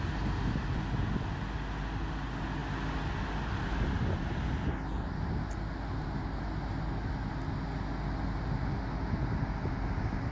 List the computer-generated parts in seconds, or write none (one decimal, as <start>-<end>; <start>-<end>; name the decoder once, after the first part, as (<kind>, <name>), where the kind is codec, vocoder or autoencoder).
none